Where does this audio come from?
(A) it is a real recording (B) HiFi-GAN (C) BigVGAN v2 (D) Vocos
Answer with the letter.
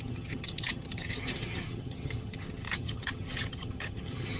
B